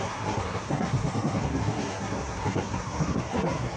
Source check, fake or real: fake